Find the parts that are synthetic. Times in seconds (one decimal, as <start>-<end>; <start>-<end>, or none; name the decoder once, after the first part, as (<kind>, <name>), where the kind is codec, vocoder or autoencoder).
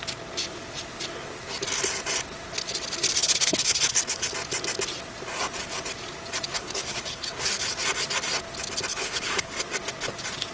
3.2-4.3 (codec, HILCodec); 6.5-7.6; 8.9-9.5